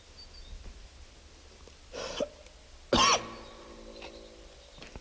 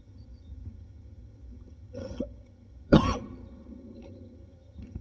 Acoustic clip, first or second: first